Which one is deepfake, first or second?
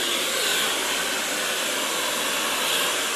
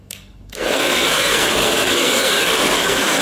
second